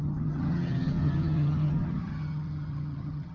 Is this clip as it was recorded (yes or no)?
no